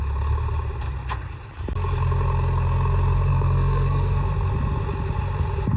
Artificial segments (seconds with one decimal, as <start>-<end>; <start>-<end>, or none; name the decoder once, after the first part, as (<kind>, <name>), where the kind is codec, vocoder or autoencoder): 3.3-4.2 (codec, SNAC)

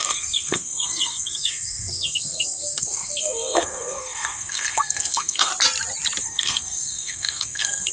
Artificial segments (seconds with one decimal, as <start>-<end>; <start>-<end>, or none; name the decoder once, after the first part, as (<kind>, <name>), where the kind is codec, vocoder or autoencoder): 0.0-5.5 (codec, SNAC); 6.2-7.9

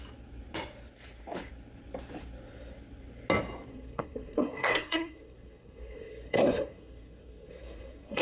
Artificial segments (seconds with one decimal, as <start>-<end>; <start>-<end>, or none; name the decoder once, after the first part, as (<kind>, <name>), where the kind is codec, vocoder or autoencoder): 3.7-8.2 (codec, SNAC)

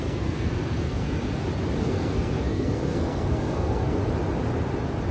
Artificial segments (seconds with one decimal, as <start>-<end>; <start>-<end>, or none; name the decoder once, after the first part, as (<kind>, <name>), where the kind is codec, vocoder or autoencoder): 0.0-1.2 (codec, SNAC); 1.8-4.0

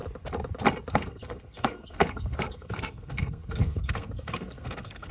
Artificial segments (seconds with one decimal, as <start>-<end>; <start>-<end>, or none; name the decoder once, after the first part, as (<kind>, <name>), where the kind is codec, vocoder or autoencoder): 0.9-5.1 (codec, SNAC)

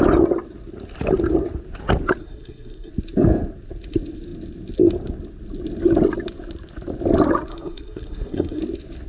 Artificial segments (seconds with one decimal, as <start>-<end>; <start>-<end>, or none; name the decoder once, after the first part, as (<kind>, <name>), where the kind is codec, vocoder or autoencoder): 2.2-2.9 (codec, SNAC); 7.5-8.6